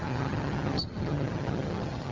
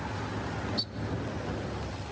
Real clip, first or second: second